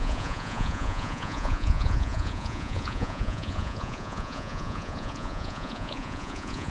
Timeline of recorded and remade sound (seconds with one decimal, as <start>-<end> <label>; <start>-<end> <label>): 0.0-6.7 remade